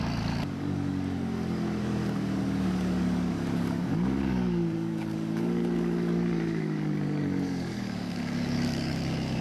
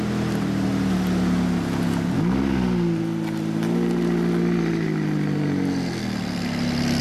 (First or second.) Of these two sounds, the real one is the second